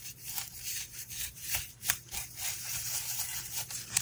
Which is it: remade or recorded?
remade